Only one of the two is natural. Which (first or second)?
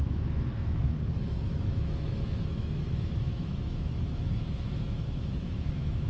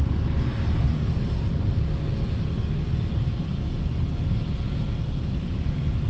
second